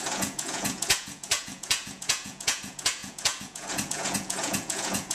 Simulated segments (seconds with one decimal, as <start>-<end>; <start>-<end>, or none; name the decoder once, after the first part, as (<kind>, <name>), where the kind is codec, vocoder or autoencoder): 0.0-5.1 (vocoder, Vocos)